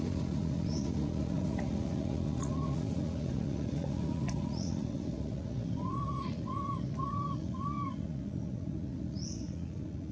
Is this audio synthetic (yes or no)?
yes